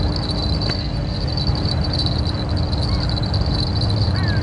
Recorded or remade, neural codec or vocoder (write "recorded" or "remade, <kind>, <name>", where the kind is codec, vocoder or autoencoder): recorded